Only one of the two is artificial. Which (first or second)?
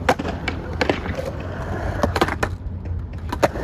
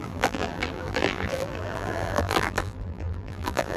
second